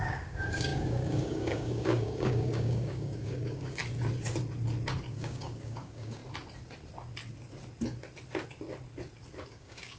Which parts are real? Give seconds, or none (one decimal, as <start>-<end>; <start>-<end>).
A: 3.8-5.1; 6.2-9.5